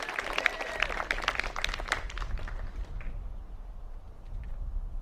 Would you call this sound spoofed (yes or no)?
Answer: no